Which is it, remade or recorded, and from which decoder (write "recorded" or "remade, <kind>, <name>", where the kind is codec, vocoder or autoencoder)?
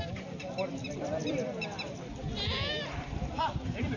remade, vocoder, BigVGAN v2